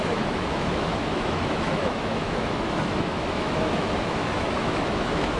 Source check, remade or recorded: remade